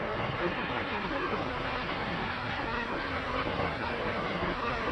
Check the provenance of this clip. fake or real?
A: fake